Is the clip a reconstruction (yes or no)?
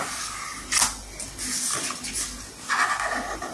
no